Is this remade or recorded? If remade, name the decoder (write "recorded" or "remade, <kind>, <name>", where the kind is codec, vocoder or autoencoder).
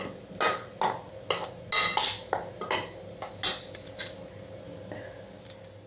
recorded